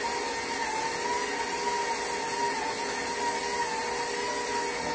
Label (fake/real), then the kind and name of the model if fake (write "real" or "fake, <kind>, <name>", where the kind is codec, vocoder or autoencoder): real